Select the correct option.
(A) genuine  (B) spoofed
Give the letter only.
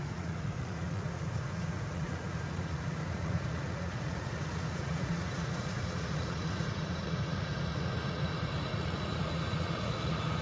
B